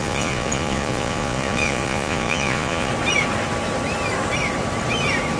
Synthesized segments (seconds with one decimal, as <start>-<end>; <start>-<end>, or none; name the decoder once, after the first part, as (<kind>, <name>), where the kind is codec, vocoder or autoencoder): 0.0-2.9 (vocoder, Vocos)

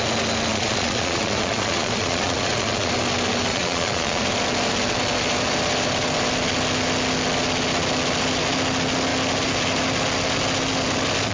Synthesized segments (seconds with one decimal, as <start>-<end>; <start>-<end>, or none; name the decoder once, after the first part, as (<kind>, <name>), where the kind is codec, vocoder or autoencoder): 0.5-2.9 (vocoder, Vocos); 3.5-4.2

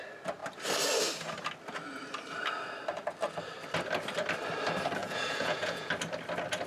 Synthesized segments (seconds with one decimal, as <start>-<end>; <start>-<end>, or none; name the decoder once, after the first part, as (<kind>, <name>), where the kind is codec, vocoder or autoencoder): 5.0-5.9 (vocoder, Vocos)

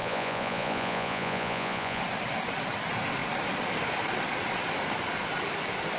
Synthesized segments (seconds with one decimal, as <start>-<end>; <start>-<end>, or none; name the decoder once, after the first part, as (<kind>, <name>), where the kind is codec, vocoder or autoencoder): 0.0-2.0 (vocoder, Vocos)